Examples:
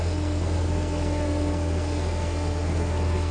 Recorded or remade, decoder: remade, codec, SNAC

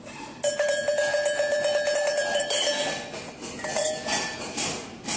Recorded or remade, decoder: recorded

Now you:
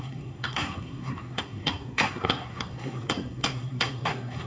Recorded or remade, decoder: remade, codec, SNAC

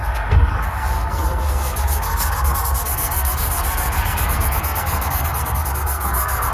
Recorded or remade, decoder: remade, codec, SNAC